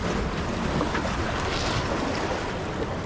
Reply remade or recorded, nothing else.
recorded